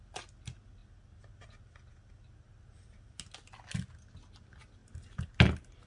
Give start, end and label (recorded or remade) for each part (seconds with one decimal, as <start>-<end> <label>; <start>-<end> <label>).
0.0-5.9 recorded